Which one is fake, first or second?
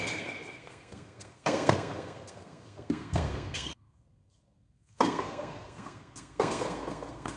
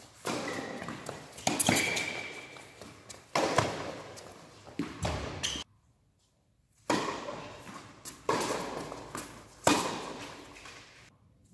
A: first